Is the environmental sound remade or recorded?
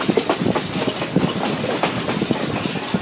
recorded